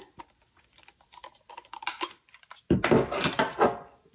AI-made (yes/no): no